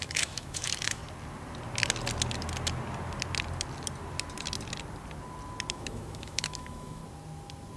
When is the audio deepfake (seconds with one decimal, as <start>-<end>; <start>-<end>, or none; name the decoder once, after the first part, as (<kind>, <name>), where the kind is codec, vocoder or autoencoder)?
0.0-1.0 (autoencoder, DAC-VAE); 5.7-7.0